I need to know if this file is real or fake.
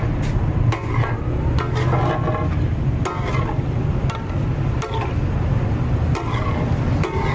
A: real